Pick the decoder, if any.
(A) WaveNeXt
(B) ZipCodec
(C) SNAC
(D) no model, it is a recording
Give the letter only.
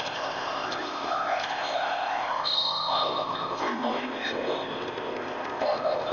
B